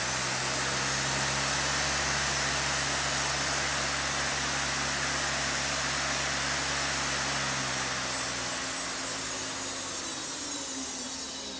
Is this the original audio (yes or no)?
yes